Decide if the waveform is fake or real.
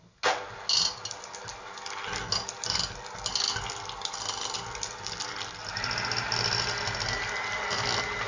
real